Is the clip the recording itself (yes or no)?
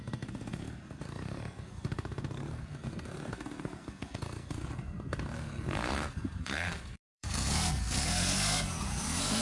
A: no